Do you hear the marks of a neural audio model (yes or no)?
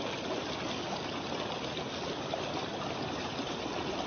no